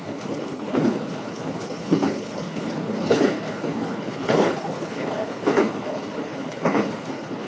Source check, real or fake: fake